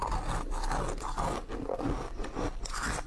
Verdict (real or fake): real